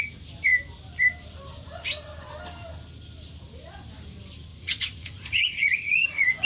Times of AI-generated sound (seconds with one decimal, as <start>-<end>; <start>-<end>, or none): 4.5-6.4